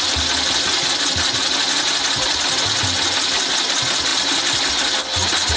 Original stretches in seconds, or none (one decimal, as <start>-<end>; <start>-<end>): 0.0-5.6